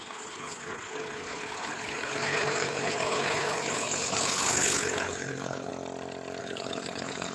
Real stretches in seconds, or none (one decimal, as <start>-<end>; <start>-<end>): 5.7-6.4